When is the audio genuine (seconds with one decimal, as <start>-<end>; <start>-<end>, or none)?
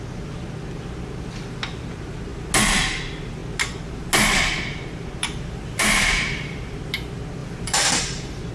0.0-5.2; 6.8-7.4